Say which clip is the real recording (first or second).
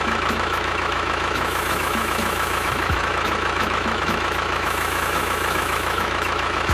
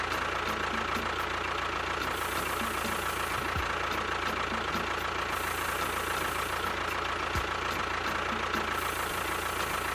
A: second